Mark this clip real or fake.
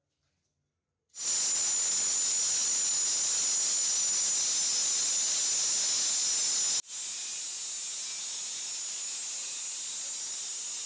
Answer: real